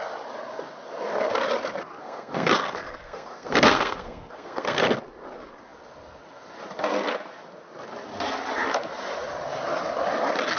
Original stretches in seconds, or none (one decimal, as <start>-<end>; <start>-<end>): 0.0-2.0; 5.0-10.6